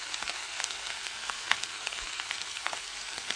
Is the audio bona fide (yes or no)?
no